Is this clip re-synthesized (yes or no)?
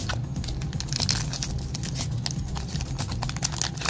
no